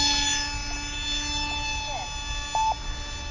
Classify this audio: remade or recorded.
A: recorded